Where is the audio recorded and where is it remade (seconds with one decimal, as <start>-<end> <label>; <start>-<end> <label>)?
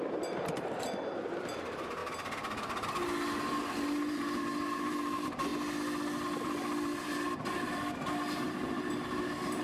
0.0-2.0 remade; 2.0-3.7 recorded; 3.7-5.5 remade; 5.5-6.4 recorded; 6.4-9.6 remade